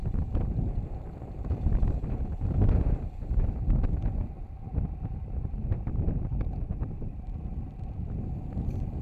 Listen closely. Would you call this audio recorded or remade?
remade